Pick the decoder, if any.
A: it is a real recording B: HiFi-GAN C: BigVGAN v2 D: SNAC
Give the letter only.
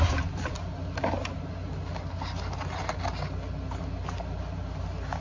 A